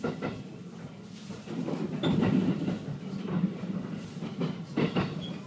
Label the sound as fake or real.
real